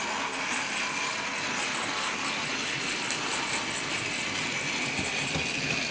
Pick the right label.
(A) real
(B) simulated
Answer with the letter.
A